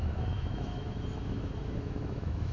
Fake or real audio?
fake